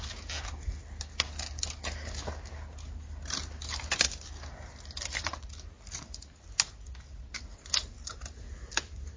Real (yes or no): yes